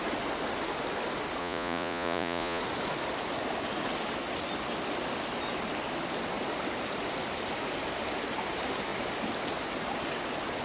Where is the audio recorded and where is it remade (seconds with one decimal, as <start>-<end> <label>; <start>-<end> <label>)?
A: 0.0-1.4 recorded; 1.4-2.6 remade; 2.6-10.6 recorded